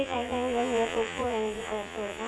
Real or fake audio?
fake